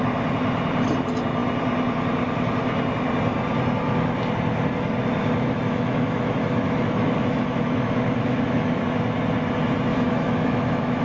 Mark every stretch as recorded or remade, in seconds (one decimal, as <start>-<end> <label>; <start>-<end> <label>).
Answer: 0.0-5.2 recorded; 5.2-8.8 remade; 8.8-9.9 recorded; 9.9-11.0 remade